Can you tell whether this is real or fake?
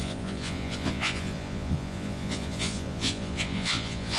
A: fake